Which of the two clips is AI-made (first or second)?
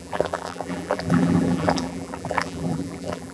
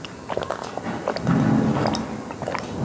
first